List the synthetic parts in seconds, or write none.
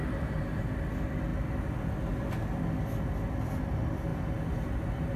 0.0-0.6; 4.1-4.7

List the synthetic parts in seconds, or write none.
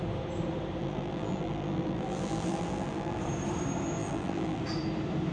0.8-3.2; 4.0-4.6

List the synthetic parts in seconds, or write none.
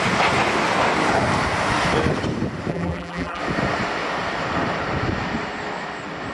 2.7-3.4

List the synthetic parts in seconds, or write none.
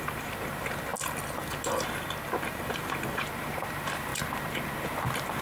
0.0-0.9; 2.5-4.1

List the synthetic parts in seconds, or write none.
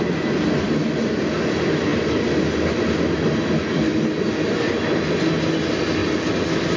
none